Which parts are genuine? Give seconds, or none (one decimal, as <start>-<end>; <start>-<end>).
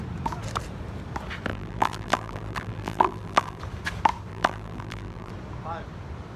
0.0-1.5; 3.6-4.3; 5.3-6.4